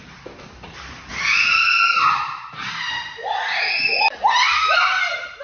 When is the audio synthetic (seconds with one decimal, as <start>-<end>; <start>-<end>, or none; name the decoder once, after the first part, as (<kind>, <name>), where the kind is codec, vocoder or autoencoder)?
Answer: 0.0-1.1 (vocoder, BigVGAN v2); 4.3-5.4